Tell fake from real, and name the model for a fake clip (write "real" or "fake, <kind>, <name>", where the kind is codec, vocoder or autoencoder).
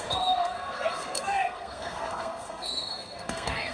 fake, codec, SNAC